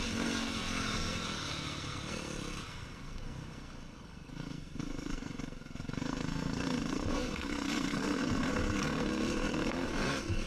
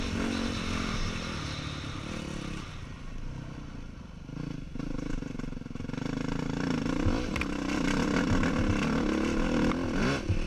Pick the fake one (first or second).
first